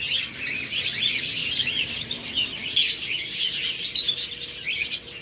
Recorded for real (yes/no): yes